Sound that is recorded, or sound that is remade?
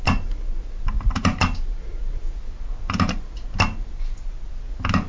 recorded